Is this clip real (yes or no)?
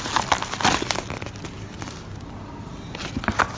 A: yes